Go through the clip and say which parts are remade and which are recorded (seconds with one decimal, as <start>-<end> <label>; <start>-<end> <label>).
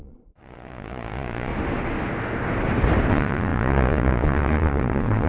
0.0-1.5 remade; 1.5-3.1 recorded; 3.1-5.3 remade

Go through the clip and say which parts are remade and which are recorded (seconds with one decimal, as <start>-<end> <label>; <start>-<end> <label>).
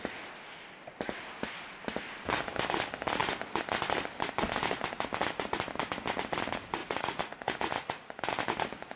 0.0-6.8 recorded; 6.8-8.2 remade; 8.2-9.0 recorded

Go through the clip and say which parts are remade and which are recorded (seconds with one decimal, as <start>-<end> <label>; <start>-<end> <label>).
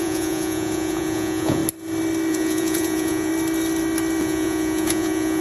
0.0-1.6 remade; 1.6-2.3 recorded; 2.3-3.3 remade; 3.3-4.2 recorded; 4.2-5.4 remade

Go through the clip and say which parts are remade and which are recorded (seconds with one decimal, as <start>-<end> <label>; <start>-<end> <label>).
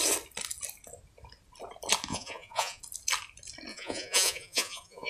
0.0-2.1 recorded; 2.1-2.8 remade; 2.8-3.7 recorded; 3.7-5.1 remade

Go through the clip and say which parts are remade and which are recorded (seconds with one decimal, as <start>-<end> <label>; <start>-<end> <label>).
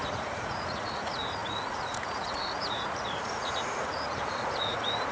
0.0-5.1 remade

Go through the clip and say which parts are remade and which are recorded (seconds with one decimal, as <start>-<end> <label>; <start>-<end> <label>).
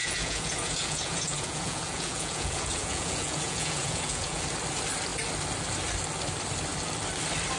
0.0-4.4 remade; 4.4-7.6 recorded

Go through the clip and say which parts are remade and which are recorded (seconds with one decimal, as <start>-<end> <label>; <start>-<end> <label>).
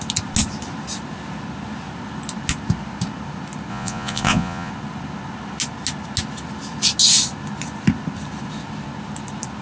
0.0-3.7 recorded; 3.7-4.7 remade; 4.7-9.6 recorded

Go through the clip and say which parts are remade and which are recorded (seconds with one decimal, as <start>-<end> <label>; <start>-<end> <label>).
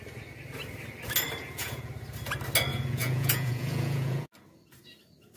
0.0-1.4 recorded; 1.4-1.9 remade; 1.9-2.7 recorded; 2.7-4.3 remade; 4.3-5.4 recorded